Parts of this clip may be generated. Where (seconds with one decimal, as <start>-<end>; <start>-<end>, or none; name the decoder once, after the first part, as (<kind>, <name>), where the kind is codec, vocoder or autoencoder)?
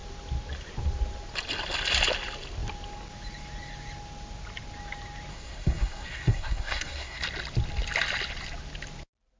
5.3-7.2 (codec, SNAC)